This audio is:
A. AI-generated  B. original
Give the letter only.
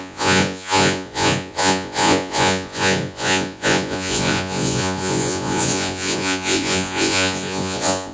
A